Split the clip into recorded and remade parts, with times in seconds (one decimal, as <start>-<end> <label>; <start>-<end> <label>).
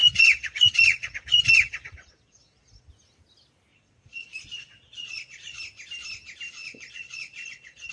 0.0-2.9 remade; 2.9-3.7 recorded; 3.7-5.6 remade; 5.6-6.6 recorded; 6.6-7.9 remade